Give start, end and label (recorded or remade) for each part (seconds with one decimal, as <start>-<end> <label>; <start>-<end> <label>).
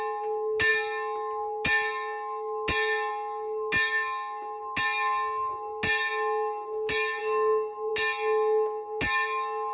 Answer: 0.0-7.2 recorded; 7.2-7.9 remade; 7.9-9.7 recorded